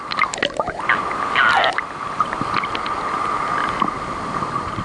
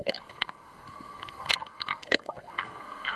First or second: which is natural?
first